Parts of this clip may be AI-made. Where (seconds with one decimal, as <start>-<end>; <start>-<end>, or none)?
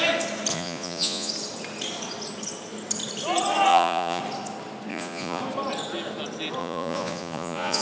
0.5-1.3; 3.7-4.2; 4.9-5.4; 6.6-7.8